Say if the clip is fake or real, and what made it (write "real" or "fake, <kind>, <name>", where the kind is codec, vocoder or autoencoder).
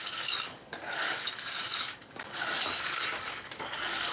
fake, codec, DAC